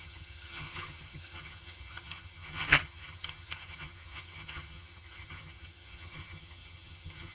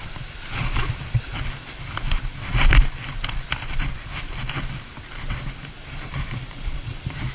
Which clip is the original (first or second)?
second